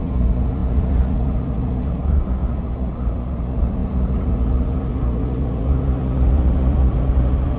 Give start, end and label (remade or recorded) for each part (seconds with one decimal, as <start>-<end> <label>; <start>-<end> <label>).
0.0-7.6 remade